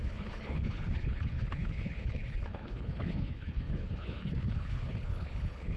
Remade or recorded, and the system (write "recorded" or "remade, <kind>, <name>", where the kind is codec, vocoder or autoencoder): remade, codec, HILCodec